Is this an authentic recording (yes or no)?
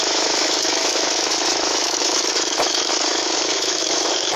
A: no